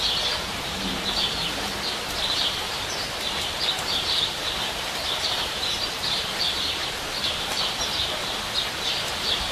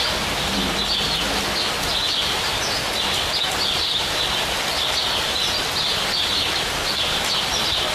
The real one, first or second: second